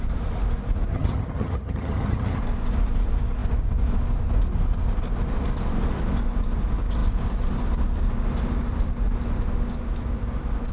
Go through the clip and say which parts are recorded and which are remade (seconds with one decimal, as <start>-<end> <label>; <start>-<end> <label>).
0.0-0.9 recorded; 0.9-2.4 remade; 2.4-10.7 recorded